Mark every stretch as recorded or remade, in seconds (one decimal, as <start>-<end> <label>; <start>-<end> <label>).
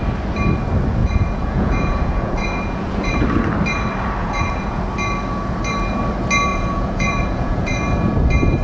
0.0-1.0 recorded; 1.0-3.2 remade; 3.2-4.2 recorded; 4.2-4.8 remade; 4.8-6.5 recorded; 6.5-7.8 remade; 7.8-8.6 recorded